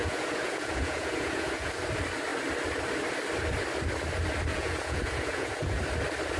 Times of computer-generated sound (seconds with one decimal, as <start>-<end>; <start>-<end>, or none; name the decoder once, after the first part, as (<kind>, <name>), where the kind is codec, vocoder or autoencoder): 0.0-1.7 (vocoder, Vocos); 4.5-5.8